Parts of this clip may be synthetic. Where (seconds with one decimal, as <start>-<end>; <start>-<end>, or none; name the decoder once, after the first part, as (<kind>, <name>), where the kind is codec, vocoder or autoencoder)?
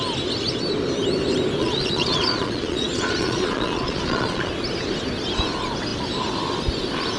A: 1.6-4.5 (vocoder, Vocos)